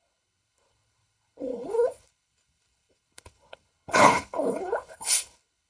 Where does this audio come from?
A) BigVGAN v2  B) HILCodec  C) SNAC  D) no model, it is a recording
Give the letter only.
B